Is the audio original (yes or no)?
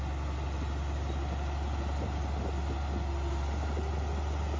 yes